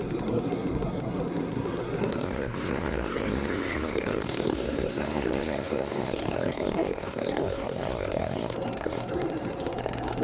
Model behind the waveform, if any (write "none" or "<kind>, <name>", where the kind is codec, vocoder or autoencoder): codec, SNAC